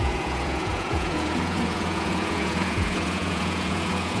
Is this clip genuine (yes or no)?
no